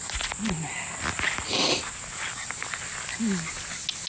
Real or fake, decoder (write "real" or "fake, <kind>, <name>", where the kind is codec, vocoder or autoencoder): real